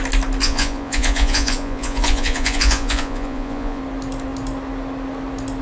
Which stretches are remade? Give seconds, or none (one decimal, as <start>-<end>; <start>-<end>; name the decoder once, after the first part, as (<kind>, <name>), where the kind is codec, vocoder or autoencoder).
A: 0.4-3.8 (vocoder, Vocos)